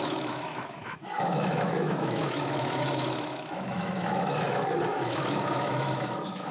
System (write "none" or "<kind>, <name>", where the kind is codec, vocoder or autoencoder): autoencoder, DAC-VAE